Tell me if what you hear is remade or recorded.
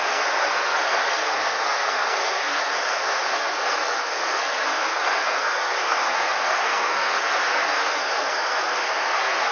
remade